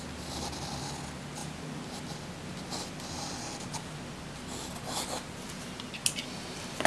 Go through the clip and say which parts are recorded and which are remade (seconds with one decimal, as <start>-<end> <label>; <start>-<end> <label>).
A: 0.0-6.9 recorded